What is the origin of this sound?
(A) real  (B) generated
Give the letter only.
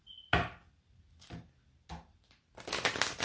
A